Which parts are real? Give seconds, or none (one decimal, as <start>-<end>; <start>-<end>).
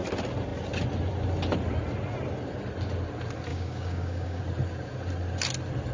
0.0-3.5; 4.4-5.9